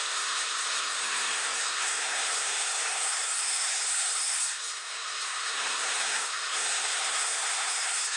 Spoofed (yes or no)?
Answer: yes